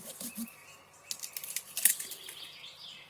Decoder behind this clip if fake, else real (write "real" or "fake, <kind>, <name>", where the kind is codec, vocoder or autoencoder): real